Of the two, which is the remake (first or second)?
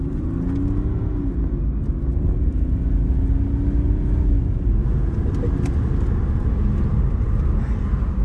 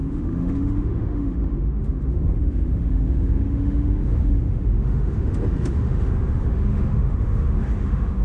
second